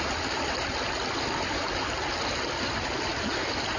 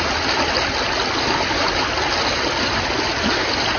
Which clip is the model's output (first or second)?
first